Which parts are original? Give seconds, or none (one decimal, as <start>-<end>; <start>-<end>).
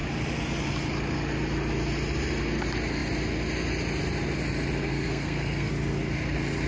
0.0-4.9; 5.7-6.7